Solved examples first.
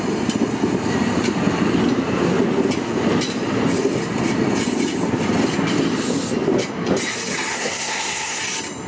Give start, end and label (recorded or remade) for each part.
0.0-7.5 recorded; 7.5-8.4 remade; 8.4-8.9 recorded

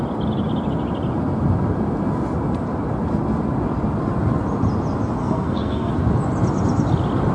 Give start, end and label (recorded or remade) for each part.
0.0-5.2 recorded; 5.2-5.9 remade; 5.9-7.3 recorded

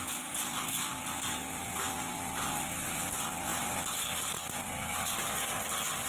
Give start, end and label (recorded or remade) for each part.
0.0-6.1 recorded